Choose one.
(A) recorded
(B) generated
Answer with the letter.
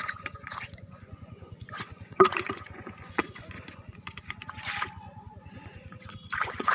B